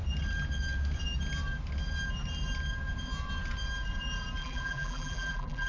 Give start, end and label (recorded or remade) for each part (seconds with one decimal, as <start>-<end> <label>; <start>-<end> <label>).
0.0-4.4 recorded; 4.4-5.7 remade